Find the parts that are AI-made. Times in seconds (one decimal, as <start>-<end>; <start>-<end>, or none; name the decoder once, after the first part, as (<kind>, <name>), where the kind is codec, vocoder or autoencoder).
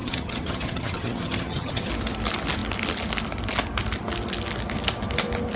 0.0-1.9 (vocoder, HiFi-GAN)